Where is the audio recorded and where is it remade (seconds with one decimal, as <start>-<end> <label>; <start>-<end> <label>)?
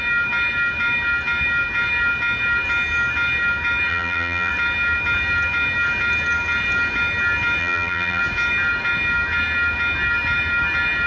0.0-3.9 recorded; 3.9-4.5 remade; 4.5-7.6 recorded; 7.6-8.2 remade; 8.2-11.1 recorded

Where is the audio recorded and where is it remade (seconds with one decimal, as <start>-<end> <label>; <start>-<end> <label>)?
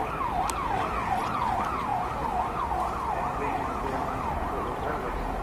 0.0-5.4 recorded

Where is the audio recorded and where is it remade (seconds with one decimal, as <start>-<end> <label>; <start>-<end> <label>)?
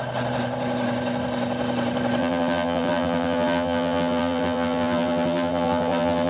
0.0-2.2 recorded; 2.2-6.3 remade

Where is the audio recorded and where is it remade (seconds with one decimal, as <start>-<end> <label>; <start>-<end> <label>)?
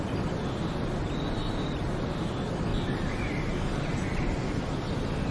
0.0-2.7 recorded; 2.7-4.1 remade; 4.1-5.3 recorded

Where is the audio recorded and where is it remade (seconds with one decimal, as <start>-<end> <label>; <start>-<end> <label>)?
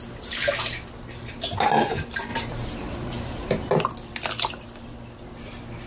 0.0-2.3 recorded; 2.3-3.7 remade; 3.7-5.9 recorded